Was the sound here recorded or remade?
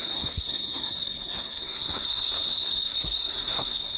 remade